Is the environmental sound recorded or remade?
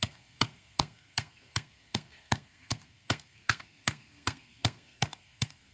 remade